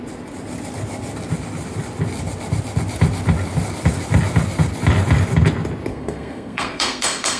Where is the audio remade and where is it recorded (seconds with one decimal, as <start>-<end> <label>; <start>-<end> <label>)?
0.0-5.9 recorded; 5.9-7.4 remade